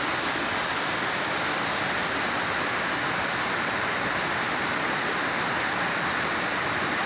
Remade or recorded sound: recorded